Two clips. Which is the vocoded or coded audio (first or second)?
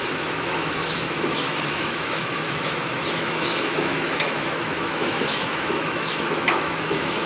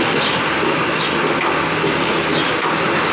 first